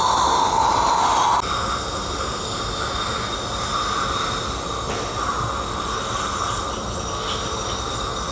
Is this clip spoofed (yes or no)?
no